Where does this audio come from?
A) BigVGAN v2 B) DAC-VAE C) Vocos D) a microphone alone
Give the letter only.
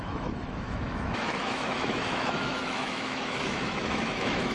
B